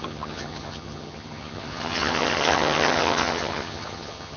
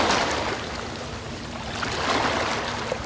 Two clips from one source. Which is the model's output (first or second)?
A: first